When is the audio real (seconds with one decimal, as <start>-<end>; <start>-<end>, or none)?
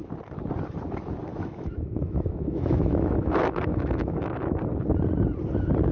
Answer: 0.0-1.3; 4.6-5.9